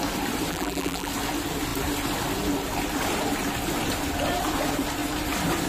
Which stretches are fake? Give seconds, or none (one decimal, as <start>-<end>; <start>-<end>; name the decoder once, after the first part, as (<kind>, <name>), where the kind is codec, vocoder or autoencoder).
0.5-1.1 (vocoder, BigVGAN v2)